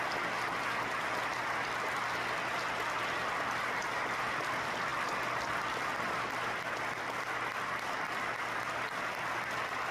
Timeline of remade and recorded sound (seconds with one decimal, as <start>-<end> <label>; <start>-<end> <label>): 0.0-9.9 recorded